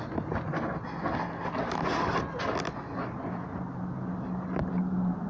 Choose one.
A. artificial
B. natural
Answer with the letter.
B